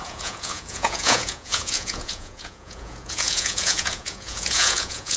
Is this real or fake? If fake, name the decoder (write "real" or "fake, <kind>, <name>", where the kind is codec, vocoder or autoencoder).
fake, vocoder, Vocos